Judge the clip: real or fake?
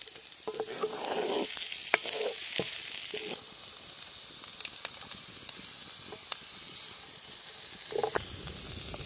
real